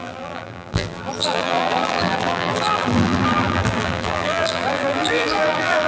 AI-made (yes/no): yes